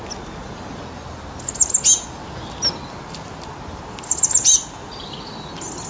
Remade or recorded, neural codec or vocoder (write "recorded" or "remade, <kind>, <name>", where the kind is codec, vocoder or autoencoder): recorded